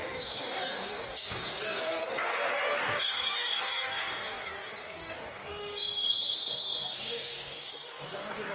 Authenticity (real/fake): fake